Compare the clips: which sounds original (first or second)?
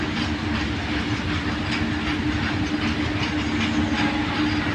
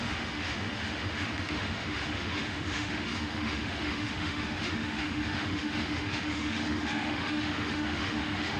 first